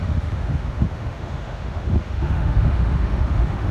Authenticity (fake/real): fake